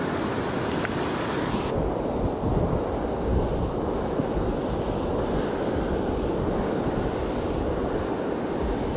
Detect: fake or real real